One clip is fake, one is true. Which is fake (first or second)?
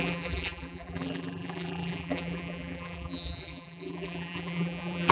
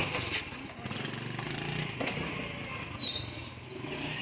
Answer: first